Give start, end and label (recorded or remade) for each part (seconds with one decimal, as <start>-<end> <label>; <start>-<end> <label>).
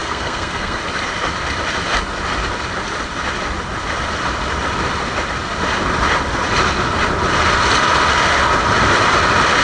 0.0-0.8 remade; 0.8-9.6 recorded